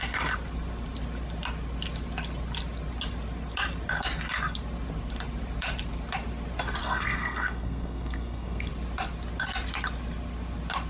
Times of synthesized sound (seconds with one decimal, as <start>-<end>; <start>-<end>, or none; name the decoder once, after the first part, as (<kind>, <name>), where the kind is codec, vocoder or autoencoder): 6.8-8.7 (codec, SNAC)